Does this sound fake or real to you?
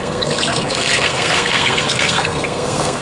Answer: fake